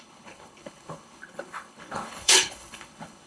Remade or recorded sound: remade